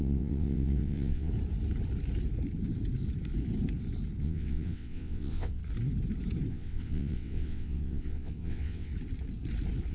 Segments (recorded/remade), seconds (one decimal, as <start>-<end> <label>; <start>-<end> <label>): 0.0-1.3 remade; 1.3-4.2 recorded; 4.2-5.6 remade; 5.6-6.5 recorded; 6.5-8.9 remade; 8.9-9.9 recorded